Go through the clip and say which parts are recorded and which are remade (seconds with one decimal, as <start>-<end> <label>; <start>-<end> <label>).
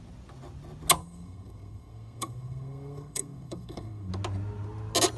0.0-1.0 recorded; 1.0-4.1 remade; 4.1-5.2 recorded